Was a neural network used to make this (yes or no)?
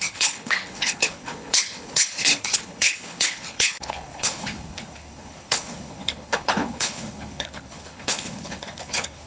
yes